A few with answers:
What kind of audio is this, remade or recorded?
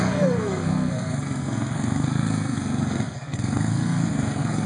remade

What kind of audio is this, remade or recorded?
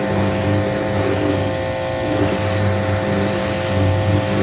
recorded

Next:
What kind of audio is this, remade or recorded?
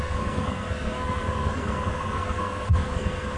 remade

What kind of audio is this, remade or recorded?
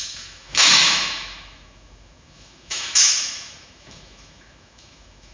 remade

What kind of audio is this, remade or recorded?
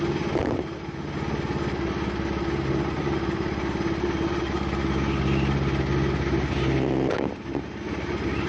recorded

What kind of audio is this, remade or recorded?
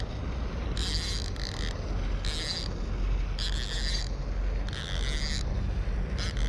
recorded